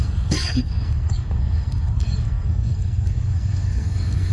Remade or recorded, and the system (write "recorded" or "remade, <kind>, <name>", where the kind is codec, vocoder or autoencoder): remade, codec, SNAC